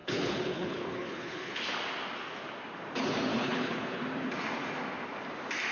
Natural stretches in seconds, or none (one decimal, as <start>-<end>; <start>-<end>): 1.6-3.3; 4.0-5.7